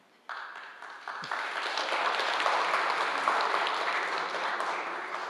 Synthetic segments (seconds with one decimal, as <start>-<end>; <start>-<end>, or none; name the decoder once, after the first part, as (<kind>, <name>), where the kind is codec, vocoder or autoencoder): none